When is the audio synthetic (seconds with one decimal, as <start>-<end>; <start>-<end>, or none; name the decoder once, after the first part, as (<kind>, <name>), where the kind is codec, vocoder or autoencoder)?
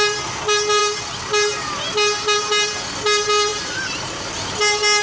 3.5-4.0 (vocoder, BigVGAN v2)